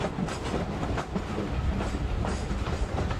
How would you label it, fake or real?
real